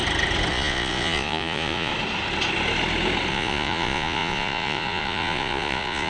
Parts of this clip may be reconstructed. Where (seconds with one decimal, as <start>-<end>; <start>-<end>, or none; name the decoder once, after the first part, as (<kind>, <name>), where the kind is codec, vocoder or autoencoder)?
0.5-1.9 (vocoder, Vocos); 3.3-6.1